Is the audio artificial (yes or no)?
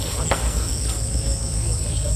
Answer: yes